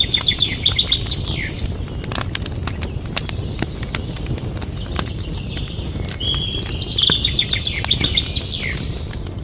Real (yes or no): yes